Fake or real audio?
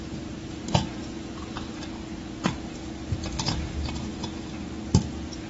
real